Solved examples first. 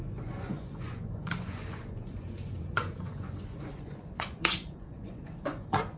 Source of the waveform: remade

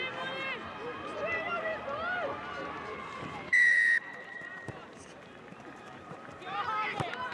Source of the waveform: remade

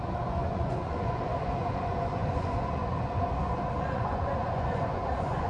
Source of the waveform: remade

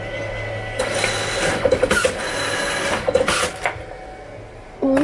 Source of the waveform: recorded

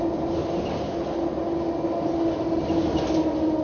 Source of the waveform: recorded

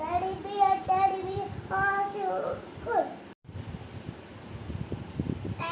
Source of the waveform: recorded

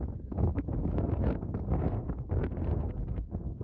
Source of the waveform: remade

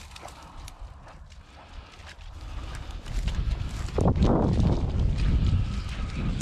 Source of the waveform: recorded